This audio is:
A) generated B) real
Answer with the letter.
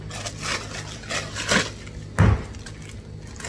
B